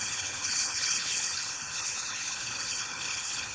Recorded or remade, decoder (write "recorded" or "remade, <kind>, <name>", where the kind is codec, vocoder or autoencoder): remade, codec, HILCodec